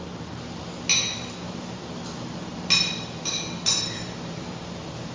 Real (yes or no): yes